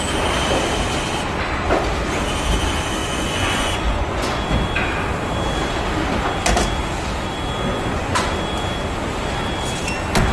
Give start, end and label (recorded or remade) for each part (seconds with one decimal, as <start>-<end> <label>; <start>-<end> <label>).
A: 0.0-3.0 recorded; 3.0-4.4 remade; 4.4-7.7 recorded; 7.7-8.3 remade; 8.3-10.3 recorded